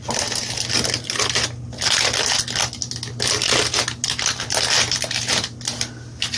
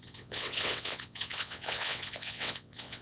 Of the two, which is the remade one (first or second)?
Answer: second